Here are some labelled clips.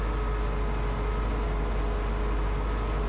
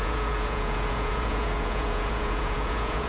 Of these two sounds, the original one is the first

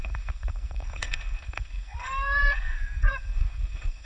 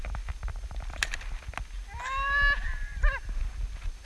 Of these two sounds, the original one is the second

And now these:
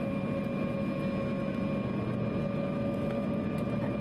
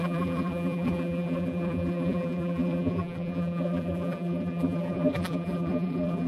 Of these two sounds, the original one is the first